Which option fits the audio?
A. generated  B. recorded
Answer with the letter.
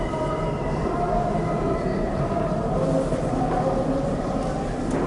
B